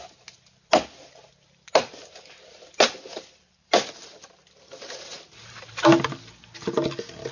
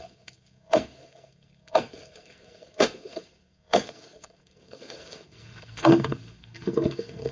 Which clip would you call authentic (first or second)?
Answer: first